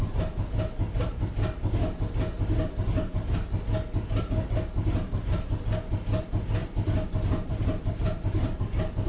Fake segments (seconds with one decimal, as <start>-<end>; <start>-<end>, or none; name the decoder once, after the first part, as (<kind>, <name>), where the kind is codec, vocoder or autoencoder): 6.6-8.6 (vocoder, BigVGAN v2)